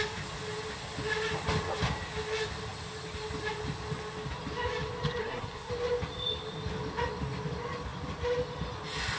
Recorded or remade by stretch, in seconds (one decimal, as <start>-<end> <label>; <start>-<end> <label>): 0.0-5.2 recorded; 5.2-5.7 remade; 5.7-9.2 recorded